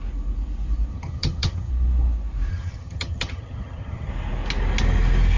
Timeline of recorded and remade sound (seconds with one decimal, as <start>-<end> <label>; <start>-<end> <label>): 0.0-0.9 recorded; 0.9-1.7 remade; 1.7-2.5 recorded; 2.5-4.1 remade; 4.1-5.4 recorded

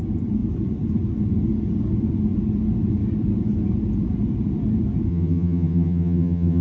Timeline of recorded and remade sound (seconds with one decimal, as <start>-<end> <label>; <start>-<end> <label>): 0.0-5.1 recorded; 5.1-6.6 remade

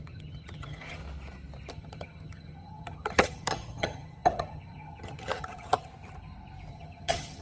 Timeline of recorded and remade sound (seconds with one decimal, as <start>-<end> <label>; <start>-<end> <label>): 0.0-1.0 remade; 1.0-1.7 recorded; 1.7-5.9 remade; 5.9-6.7 recorded; 6.7-7.4 remade

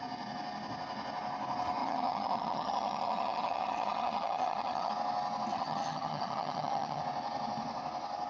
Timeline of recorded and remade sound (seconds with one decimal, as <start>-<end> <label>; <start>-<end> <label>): 0.0-1.8 recorded; 1.8-4.9 remade; 4.9-5.5 recorded; 5.5-7.0 remade; 7.0-8.3 recorded

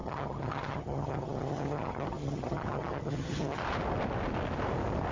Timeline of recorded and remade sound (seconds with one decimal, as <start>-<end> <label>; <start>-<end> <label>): 0.0-3.6 remade; 3.6-5.1 recorded

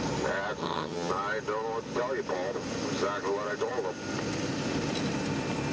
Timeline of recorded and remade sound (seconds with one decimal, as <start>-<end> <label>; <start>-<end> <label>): 0.0-0.6 recorded; 0.6-1.1 remade; 1.1-5.7 recorded